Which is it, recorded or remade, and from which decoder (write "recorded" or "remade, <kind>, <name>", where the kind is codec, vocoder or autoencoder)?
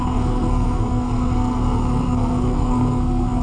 remade, codec, SNAC